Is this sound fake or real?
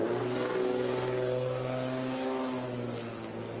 real